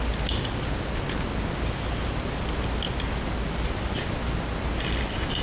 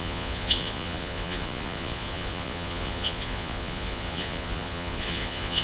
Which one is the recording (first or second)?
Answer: first